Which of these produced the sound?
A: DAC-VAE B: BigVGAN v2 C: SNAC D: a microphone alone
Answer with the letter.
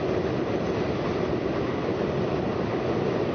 D